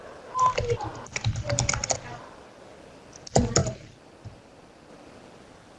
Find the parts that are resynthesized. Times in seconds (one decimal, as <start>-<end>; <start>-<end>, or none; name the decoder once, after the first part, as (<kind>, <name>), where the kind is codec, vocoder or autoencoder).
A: none